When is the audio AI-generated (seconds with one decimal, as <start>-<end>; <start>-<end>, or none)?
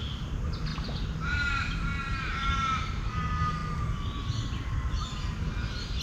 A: none